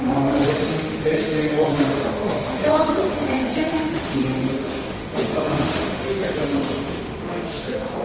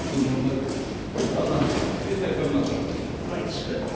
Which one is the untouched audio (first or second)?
second